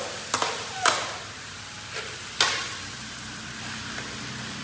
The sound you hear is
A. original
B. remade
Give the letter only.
A